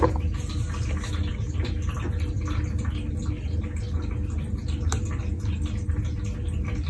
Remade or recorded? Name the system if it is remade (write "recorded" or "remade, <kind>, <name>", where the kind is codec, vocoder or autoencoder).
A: recorded